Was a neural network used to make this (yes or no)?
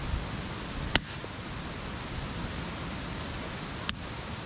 no